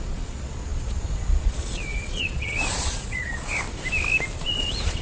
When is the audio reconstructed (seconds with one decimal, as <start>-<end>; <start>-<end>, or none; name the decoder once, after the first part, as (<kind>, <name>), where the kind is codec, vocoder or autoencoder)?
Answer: 0.0-3.5 (vocoder, Vocos); 4.4-5.0